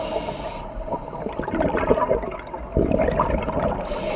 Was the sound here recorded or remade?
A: recorded